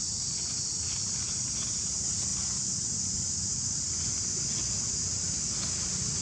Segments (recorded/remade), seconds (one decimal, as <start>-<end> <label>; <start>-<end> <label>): 0.0-6.2 recorded